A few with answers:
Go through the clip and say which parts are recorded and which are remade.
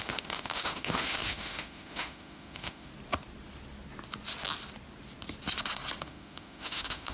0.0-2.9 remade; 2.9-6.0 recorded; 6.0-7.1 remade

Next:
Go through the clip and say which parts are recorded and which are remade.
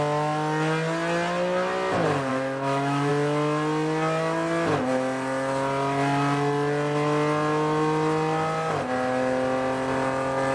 0.0-2.3 recorded; 2.3-3.1 remade; 3.1-10.5 recorded